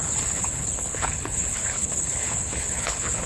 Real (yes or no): no